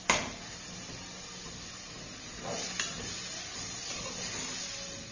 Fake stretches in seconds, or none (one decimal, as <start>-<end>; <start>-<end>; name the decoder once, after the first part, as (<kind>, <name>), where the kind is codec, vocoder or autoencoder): none